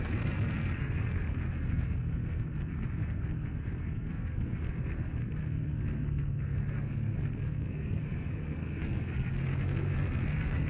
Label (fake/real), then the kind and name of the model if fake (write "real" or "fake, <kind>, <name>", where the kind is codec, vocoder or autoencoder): fake, codec, SNAC